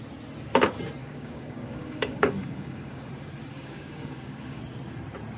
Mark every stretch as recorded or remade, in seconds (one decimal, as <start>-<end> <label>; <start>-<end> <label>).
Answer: 0.0-1.0 recorded; 1.0-3.1 remade; 3.1-3.5 recorded; 3.5-4.6 remade; 4.6-5.4 recorded